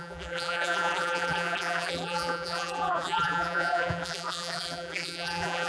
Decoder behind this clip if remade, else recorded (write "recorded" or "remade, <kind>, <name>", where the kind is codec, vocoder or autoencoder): remade, vocoder, BigVGAN v2